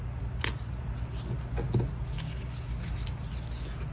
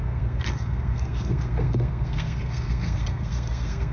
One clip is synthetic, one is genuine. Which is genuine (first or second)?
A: first